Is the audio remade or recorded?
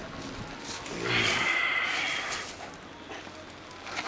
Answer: recorded